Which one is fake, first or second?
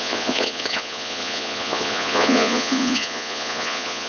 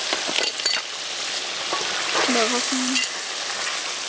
first